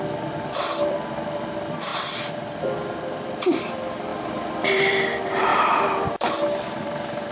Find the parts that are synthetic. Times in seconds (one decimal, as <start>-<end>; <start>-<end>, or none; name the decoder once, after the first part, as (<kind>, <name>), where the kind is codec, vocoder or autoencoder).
0.0-7.3 (vocoder, BigVGAN v2)